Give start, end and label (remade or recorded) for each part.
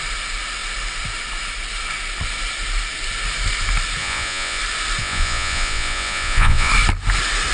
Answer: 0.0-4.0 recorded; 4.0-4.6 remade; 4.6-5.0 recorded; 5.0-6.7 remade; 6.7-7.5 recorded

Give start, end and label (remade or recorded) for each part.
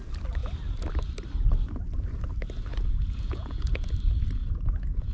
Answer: 0.0-2.7 recorded; 2.7-3.9 remade; 3.9-4.4 recorded; 4.4-5.1 remade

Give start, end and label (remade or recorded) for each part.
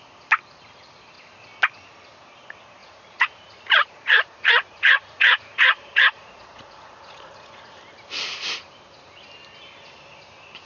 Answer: 0.0-2.8 recorded; 2.8-7.8 remade; 7.8-10.7 recorded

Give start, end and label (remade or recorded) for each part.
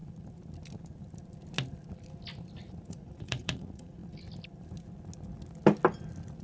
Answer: 0.0-2.9 recorded; 2.9-4.0 remade; 4.0-6.4 recorded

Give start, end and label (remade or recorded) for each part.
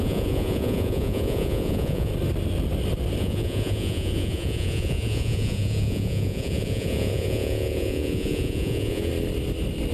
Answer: 0.0-2.1 remade; 2.1-3.2 recorded; 3.2-9.1 remade; 9.1-9.9 recorded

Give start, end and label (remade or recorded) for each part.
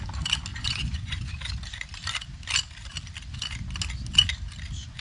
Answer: 0.0-0.5 recorded; 0.5-1.2 remade; 1.2-5.0 recorded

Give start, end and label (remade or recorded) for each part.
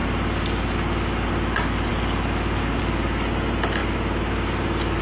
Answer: 0.0-5.0 recorded